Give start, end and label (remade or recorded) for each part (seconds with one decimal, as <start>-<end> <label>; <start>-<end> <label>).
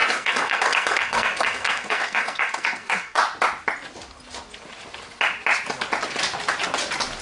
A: 0.0-3.2 remade; 3.2-7.2 recorded